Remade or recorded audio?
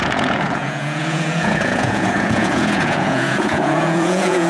remade